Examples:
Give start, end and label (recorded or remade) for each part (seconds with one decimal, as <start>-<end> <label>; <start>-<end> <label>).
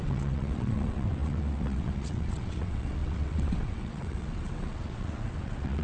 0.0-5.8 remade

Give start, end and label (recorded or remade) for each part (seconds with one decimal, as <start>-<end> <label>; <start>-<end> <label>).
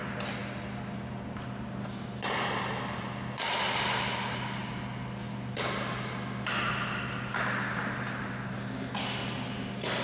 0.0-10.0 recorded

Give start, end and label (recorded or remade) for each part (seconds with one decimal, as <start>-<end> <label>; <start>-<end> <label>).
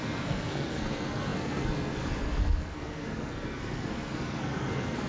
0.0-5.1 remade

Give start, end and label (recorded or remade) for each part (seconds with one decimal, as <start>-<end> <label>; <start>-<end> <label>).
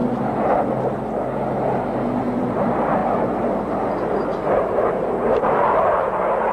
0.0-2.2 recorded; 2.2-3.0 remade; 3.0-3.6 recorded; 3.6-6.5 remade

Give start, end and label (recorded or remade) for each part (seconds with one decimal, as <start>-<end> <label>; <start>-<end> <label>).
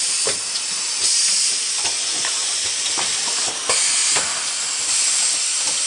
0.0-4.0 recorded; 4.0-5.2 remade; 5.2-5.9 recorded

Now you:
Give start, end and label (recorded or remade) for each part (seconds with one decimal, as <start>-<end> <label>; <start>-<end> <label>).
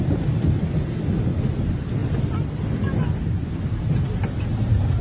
0.0-5.0 recorded